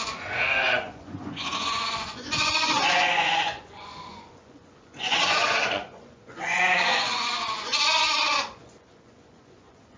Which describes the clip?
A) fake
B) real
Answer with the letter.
A